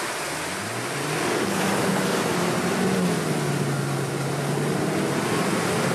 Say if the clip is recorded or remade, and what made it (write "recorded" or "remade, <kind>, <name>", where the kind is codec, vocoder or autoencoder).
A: recorded